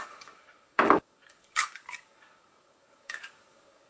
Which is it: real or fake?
fake